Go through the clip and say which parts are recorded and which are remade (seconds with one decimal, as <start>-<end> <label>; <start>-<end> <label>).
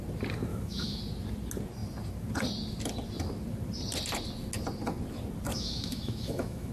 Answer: 0.0-0.5 recorded; 0.5-1.0 remade; 1.0-5.5 recorded; 5.5-6.7 remade